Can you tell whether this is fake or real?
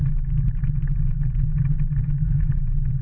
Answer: real